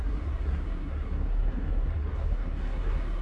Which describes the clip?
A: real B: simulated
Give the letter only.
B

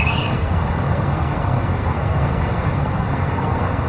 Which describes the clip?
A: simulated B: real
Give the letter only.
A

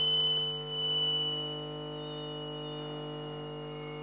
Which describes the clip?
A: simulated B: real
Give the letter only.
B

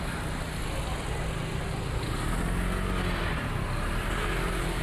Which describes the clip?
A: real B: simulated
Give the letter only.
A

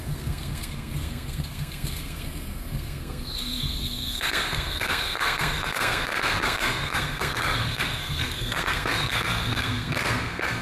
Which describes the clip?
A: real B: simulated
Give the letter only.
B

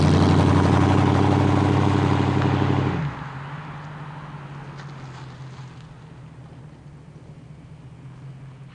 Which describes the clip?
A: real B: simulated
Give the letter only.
A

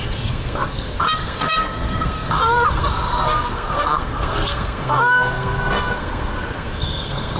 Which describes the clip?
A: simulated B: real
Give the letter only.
A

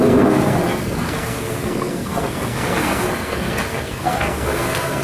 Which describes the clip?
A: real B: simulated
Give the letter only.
B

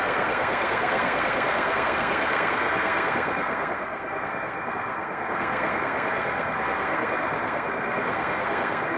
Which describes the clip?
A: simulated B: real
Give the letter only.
A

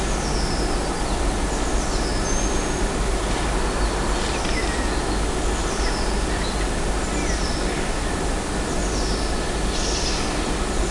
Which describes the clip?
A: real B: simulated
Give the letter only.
A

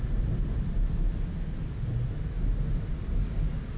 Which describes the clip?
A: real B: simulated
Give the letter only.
A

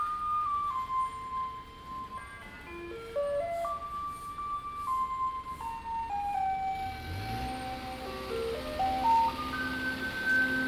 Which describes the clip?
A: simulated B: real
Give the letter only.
B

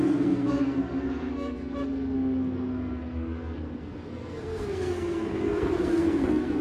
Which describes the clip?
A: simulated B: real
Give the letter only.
A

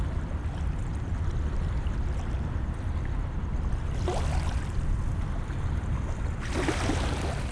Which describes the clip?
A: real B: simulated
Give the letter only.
A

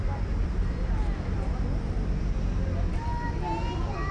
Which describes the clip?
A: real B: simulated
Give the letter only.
A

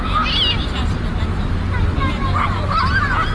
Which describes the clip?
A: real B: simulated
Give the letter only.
A